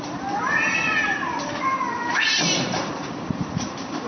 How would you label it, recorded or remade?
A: remade